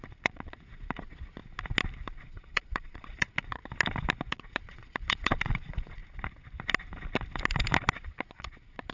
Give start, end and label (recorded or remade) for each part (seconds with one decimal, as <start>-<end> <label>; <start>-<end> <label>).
0.0-1.4 remade; 1.4-2.2 recorded; 2.2-3.6 remade; 3.6-4.3 recorded; 4.3-6.0 remade; 6.0-7.9 recorded; 7.9-8.9 remade